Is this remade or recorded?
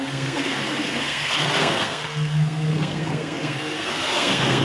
remade